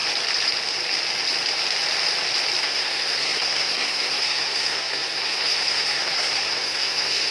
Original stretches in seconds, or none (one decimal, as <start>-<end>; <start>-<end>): 0.0-2.6